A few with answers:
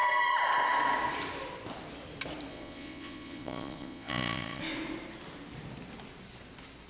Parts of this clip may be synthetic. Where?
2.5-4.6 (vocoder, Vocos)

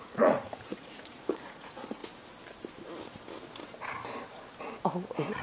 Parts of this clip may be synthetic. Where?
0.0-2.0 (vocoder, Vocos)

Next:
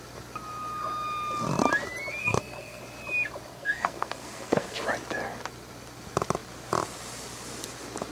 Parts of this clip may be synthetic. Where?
2.2-2.8 (codec, SNAC); 3.5-4.8

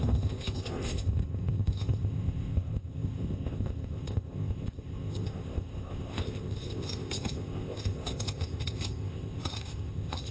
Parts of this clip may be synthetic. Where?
0.0-10.3 (codec, ZipCodec)

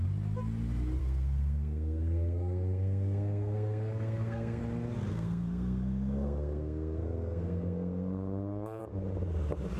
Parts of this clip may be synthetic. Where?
1.0-4.6 (codec, SNAC); 5.1-8.8

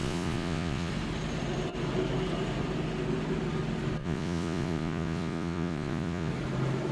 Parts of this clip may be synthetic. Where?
0.0-0.9 (vocoder, Vocos); 4.0-6.3